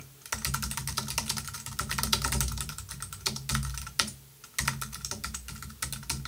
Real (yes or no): yes